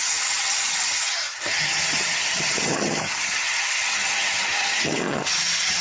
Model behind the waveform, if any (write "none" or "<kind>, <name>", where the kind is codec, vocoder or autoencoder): vocoder, HiFi-GAN